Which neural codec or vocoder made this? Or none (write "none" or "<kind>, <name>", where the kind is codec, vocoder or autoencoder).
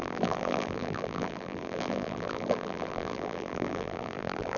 vocoder, BigVGAN v2